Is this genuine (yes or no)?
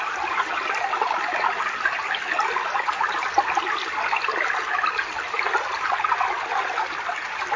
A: yes